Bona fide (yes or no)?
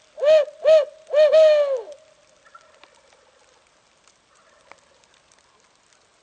yes